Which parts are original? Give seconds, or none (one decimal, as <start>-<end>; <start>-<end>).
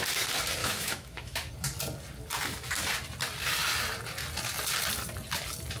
0.0-0.6; 1.5-5.8